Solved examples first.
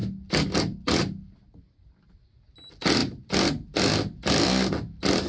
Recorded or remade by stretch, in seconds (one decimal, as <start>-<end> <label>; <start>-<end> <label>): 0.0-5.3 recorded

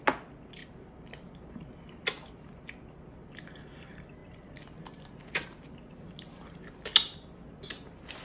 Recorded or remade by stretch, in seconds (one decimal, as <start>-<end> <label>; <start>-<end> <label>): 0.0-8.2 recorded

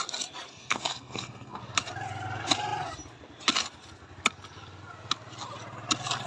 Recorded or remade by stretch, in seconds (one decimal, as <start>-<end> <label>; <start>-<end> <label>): 0.0-0.5 recorded; 0.5-1.6 remade; 1.6-6.3 recorded

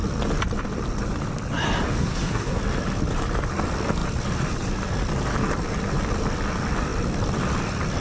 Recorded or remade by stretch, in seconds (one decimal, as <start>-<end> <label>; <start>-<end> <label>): 0.0-2.0 recorded; 2.0-2.6 remade; 2.6-8.0 recorded

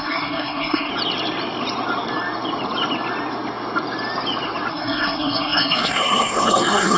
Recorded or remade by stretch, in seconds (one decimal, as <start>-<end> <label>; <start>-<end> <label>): 0.0-0.9 remade; 0.9-4.7 recorded; 4.7-7.0 remade

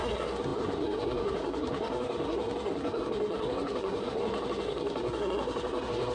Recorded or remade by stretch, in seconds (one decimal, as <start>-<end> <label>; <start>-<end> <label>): 0.0-6.1 remade

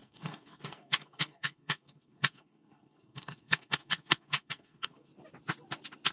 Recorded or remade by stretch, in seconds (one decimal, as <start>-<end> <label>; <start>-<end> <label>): 0.0-5.1 remade; 5.1-6.1 recorded